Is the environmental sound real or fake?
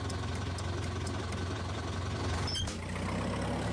real